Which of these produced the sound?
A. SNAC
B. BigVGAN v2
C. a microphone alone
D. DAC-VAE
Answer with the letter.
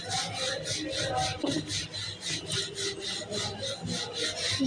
C